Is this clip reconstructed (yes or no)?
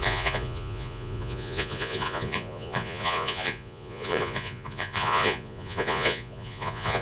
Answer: yes